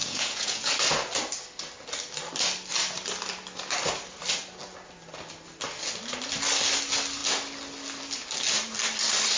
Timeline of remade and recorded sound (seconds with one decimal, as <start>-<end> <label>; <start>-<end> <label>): 0.0-0.7 remade; 0.7-9.4 recorded